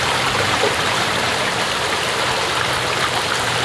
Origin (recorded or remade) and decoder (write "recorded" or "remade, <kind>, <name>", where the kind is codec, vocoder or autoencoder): remade, vocoder, BigVGAN v2